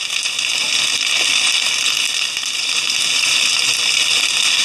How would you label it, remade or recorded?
recorded